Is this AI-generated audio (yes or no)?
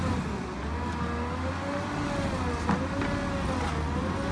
no